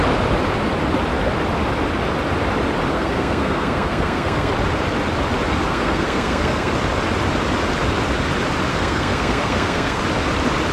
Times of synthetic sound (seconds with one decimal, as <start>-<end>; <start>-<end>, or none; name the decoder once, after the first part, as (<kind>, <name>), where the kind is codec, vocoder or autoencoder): 2.9-4.5 (codec, SNAC); 5.7-6.7; 8.7-10.0